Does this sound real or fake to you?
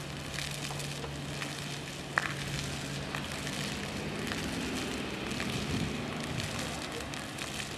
real